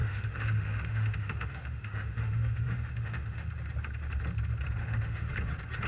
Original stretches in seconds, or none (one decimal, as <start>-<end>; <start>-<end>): 3.5-4.8; 5.3-5.9